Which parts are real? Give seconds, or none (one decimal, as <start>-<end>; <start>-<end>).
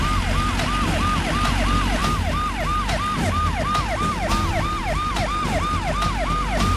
0.0-6.8